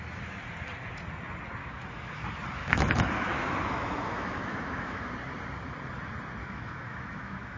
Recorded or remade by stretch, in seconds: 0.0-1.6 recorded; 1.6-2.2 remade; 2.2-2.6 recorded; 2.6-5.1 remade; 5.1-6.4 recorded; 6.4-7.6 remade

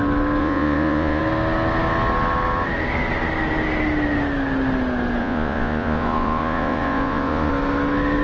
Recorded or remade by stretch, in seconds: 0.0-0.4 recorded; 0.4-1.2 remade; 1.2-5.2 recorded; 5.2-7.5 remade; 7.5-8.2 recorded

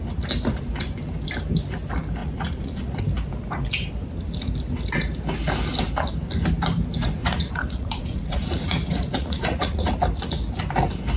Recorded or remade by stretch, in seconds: 0.0-2.2 recorded; 2.2-3.0 remade; 3.0-7.2 recorded; 7.2-9.9 remade; 9.9-11.2 recorded